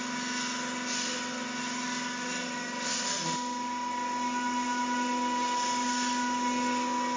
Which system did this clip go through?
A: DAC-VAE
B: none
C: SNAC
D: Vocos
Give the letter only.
B